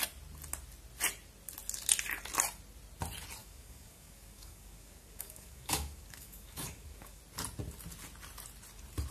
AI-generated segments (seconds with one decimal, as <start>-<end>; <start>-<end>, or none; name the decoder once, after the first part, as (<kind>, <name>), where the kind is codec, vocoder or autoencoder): 3.4-7.2 (codec, DAC)